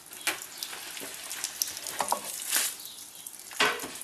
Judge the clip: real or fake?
real